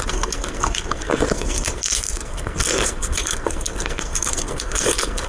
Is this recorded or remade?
remade